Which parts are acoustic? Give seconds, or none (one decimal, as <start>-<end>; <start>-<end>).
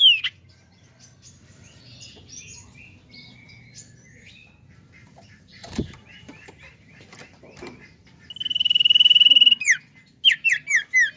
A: 0.0-5.0; 6.5-11.2